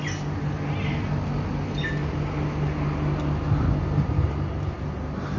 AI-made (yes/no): no